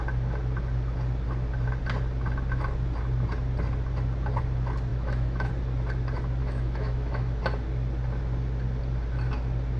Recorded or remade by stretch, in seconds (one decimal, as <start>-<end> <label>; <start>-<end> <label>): 0.0-4.9 recorded; 4.9-5.5 remade; 5.5-6.4 recorded; 6.4-7.4 remade; 7.4-9.8 recorded